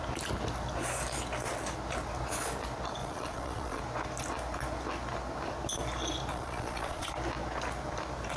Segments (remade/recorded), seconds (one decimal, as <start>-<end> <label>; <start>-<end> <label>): 0.0-3.0 recorded; 3.0-3.8 remade; 3.8-6.3 recorded; 6.3-7.1 remade; 7.1-8.4 recorded